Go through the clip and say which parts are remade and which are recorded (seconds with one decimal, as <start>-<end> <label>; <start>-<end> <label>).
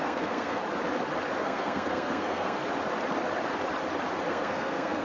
0.0-0.6 remade; 0.6-1.4 recorded; 1.4-2.6 remade; 2.6-4.3 recorded; 4.3-5.0 remade